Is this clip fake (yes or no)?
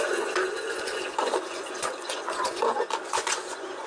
yes